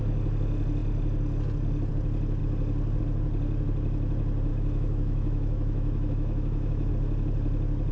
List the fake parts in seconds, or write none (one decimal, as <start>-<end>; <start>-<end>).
4.5-6.9